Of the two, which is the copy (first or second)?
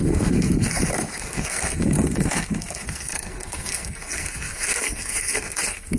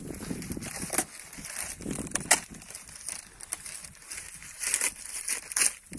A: first